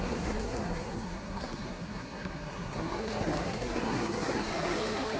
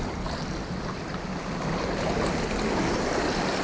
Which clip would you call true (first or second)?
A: second